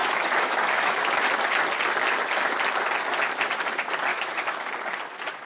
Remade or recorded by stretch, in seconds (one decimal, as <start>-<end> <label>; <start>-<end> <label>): 0.0-1.1 remade; 1.1-4.1 recorded; 4.1-4.7 remade; 4.7-5.5 recorded